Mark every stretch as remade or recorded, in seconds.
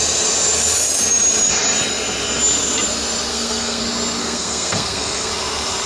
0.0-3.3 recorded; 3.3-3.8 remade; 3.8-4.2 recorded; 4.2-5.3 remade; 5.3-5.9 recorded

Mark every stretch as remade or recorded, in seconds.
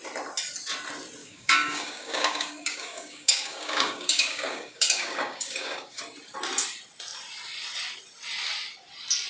0.0-1.2 recorded; 1.2-6.0 remade; 6.0-9.3 recorded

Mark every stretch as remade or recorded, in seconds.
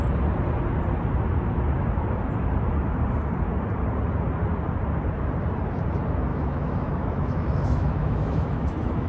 0.0-6.3 recorded; 6.3-9.1 remade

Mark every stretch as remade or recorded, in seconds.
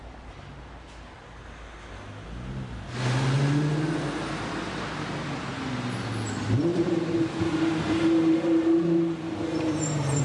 0.0-6.7 recorded; 6.7-10.2 remade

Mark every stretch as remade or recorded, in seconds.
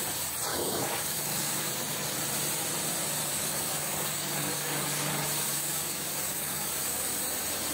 0.0-0.5 recorded; 0.5-1.7 remade; 1.7-3.3 recorded; 3.3-5.1 remade; 5.1-5.5 recorded; 5.5-7.1 remade; 7.1-7.7 recorded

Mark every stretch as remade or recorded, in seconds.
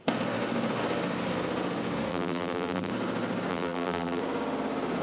0.0-2.1 recorded; 2.1-2.9 remade; 2.9-3.5 recorded; 3.5-4.2 remade; 4.2-5.0 recorded